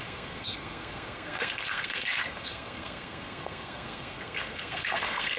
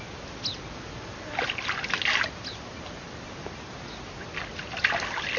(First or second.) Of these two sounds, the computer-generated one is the first